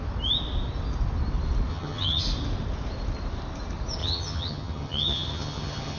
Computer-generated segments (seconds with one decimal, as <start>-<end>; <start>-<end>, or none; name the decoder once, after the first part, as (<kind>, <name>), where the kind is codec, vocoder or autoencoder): 1.7-2.2 (vocoder, HiFi-GAN); 4.0-6.0